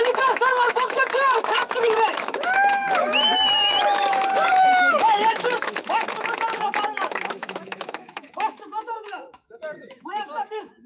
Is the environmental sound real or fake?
fake